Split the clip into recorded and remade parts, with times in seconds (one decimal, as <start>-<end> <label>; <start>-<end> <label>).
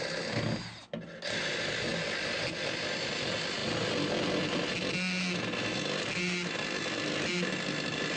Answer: 0.0-8.2 recorded